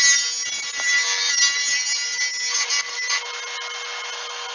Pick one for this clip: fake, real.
real